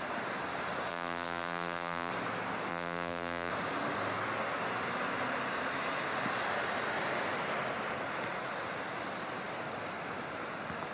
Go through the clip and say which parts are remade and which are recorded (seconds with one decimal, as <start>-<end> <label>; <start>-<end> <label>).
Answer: 0.0-0.9 recorded; 0.9-2.1 remade; 2.1-2.7 recorded; 2.7-3.5 remade; 3.5-10.9 recorded